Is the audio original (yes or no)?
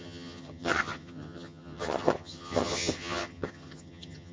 no